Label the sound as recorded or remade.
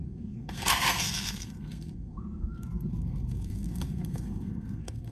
remade